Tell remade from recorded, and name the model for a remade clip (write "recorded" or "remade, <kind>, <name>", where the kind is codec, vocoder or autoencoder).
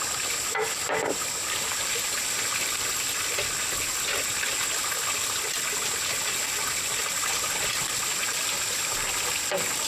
recorded